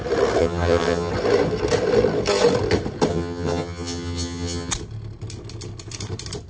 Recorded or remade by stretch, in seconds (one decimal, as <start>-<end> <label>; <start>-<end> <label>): 0.0-0.4 recorded; 0.4-1.1 remade; 1.1-3.1 recorded; 3.1-4.7 remade; 4.7-6.5 recorded